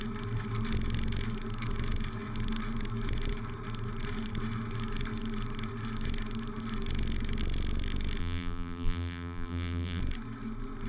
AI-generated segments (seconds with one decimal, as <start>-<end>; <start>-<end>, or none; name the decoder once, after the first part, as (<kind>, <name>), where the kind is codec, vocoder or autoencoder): 8.2-10.0 (vocoder, BigVGAN v2)